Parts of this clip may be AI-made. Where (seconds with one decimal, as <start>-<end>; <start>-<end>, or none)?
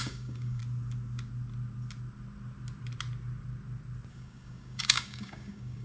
0.0-0.6; 4.1-5.8